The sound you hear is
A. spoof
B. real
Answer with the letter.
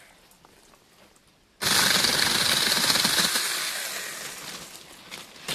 B